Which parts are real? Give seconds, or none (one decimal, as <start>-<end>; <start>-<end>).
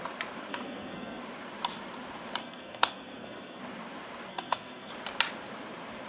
0.0-0.5; 1.2-2.4; 3.6-4.3; 4.9-6.1